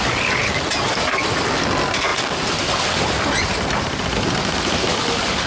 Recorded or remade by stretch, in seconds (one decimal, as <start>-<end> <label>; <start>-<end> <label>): 0.0-5.5 recorded